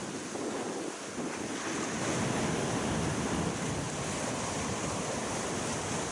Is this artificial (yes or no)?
no